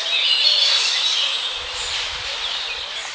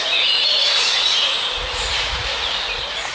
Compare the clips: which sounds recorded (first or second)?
first